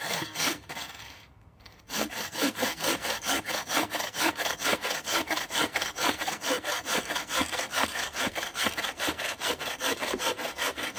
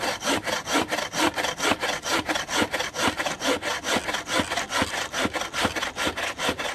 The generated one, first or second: first